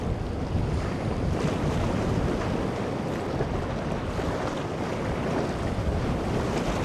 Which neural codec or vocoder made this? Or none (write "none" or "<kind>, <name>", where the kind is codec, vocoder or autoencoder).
none